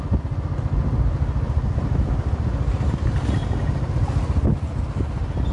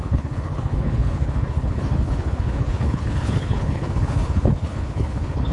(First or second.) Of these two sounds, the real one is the first